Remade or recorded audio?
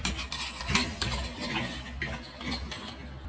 recorded